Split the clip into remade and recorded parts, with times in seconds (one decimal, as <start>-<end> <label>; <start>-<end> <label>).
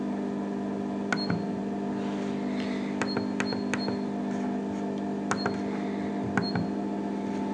0.0-7.5 recorded